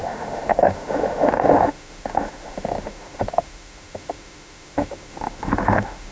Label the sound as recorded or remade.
remade